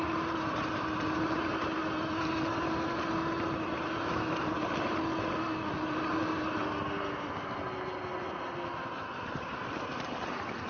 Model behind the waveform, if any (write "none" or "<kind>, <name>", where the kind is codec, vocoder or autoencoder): none